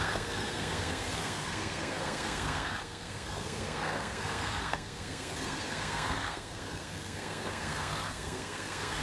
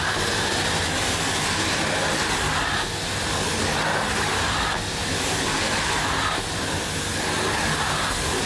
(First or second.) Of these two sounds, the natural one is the second